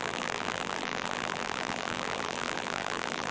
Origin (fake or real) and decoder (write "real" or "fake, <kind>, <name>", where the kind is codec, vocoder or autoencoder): fake, vocoder, BigVGAN v2